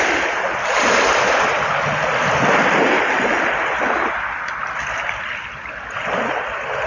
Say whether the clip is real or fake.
real